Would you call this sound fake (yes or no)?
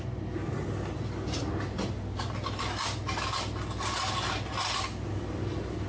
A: no